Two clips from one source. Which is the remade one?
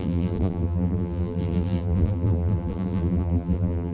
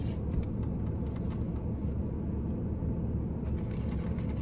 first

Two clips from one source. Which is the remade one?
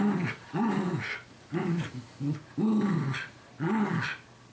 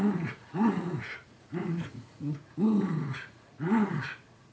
second